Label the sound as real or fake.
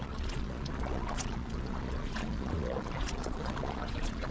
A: fake